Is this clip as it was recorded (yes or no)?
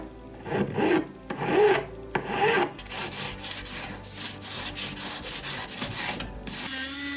yes